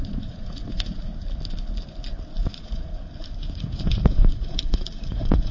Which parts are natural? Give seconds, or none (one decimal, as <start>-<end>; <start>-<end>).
1.1-2.4; 2.9-3.5